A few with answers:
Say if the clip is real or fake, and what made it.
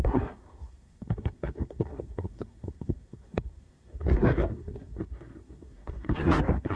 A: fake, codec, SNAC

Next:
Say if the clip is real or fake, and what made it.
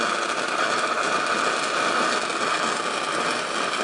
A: real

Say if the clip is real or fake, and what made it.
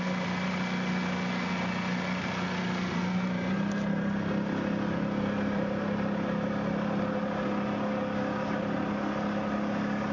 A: real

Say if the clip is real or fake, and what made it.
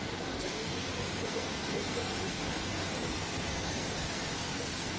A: fake, codec, SNAC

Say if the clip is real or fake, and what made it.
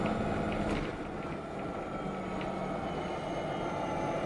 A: real